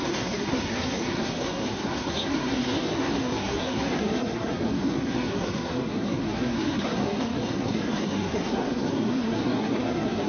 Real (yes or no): no